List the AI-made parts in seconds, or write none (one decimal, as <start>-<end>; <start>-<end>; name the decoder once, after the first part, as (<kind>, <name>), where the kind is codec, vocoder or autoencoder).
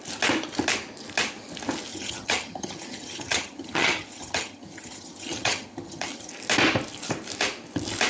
1.9-6.3 (vocoder, HiFi-GAN)